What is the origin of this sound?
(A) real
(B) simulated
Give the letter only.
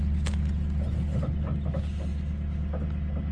A